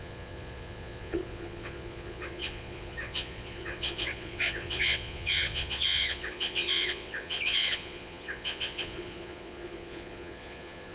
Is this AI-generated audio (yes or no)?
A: yes